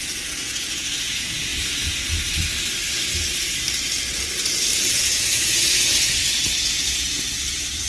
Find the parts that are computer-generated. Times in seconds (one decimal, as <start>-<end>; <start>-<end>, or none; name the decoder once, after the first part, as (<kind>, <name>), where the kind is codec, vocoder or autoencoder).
0.0-1.5 (vocoder, Vocos); 4.8-7.9